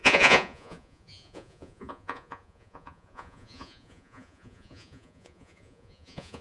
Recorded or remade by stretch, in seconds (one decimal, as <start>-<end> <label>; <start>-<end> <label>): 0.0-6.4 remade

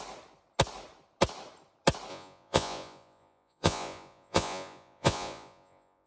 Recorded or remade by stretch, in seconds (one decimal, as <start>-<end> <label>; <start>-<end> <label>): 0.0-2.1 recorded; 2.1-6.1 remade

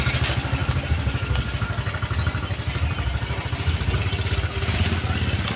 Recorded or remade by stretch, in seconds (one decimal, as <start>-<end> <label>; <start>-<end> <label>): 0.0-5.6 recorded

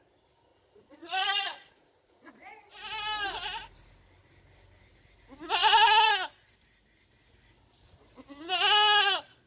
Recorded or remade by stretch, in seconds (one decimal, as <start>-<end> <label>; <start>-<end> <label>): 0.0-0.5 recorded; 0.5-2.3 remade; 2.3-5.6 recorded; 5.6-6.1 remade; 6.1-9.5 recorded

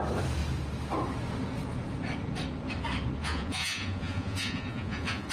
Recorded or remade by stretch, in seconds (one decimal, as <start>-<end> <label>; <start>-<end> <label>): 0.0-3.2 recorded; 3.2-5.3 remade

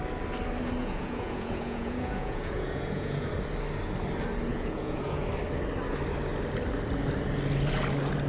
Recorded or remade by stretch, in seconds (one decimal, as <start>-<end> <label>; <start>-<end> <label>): 0.0-0.8 recorded; 0.8-3.3 remade; 3.3-4.5 recorded; 4.5-5.3 remade; 5.3-8.3 recorded